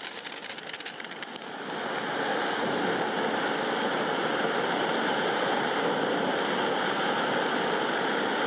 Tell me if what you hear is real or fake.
real